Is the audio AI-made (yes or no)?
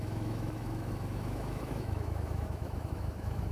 yes